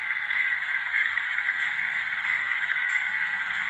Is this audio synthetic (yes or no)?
yes